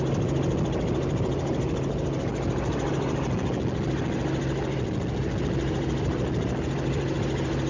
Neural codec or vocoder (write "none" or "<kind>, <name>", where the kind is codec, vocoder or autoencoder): none